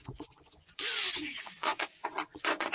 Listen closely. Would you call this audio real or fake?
fake